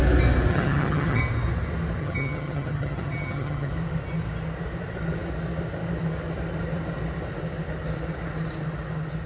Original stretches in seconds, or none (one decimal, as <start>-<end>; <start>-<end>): 0.0-0.5; 1.2-2.0; 3.7-9.3